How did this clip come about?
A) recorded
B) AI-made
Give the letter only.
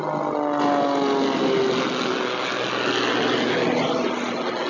A